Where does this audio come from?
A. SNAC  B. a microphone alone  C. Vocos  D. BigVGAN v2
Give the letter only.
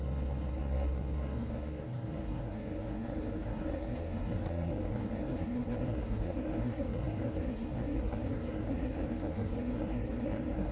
A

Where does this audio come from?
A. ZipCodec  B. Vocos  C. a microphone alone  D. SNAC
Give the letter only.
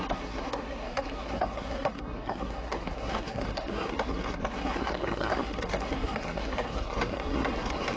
D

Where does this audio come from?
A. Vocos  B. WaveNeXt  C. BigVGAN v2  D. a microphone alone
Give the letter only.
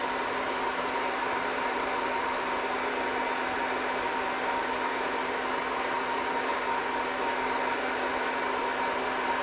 D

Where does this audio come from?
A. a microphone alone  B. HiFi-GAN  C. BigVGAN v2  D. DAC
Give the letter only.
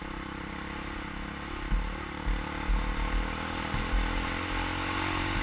A